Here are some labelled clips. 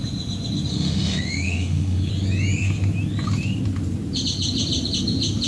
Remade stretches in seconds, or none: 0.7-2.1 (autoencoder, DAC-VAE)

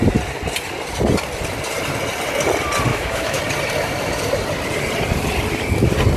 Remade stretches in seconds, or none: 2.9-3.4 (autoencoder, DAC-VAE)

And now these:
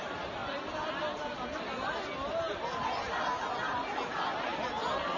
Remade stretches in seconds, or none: none

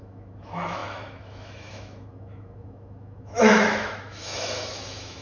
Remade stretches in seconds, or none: 0.0-5.2 (autoencoder, DAC-VAE)